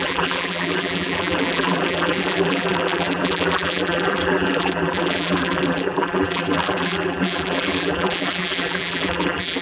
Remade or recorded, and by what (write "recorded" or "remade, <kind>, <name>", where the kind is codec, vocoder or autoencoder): remade, vocoder, BigVGAN v2